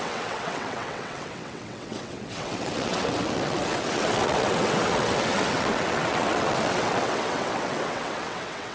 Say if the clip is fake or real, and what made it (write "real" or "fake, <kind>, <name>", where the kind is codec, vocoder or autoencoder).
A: fake, vocoder, WaveNeXt